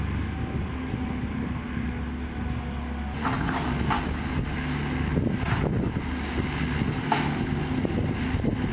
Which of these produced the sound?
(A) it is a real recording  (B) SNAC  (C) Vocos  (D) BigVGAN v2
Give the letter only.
A